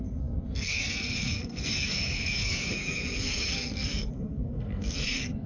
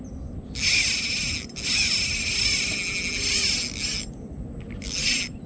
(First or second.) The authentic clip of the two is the second